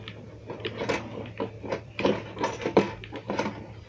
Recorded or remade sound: recorded